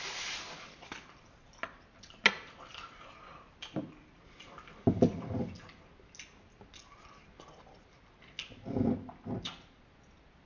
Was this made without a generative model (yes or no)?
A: yes